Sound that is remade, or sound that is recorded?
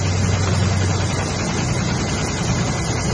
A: recorded